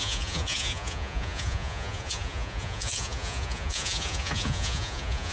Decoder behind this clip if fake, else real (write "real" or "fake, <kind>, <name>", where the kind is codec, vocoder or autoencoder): fake, vocoder, Vocos